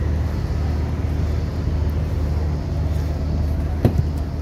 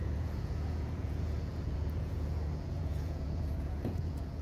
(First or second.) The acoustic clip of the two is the first